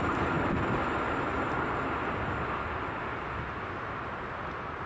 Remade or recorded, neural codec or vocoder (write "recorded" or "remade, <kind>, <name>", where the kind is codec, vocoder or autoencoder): recorded